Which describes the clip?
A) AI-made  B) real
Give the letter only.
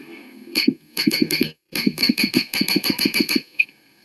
A